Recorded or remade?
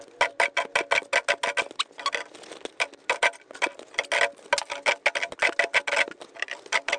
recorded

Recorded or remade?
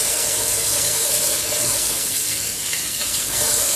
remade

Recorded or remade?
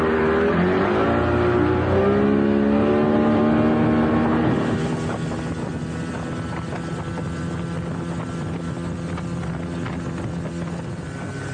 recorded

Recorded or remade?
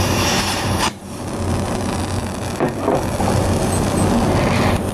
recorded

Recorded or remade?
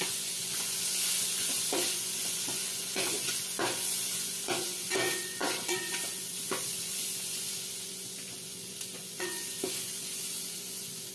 remade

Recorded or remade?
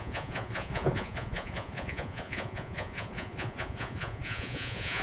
remade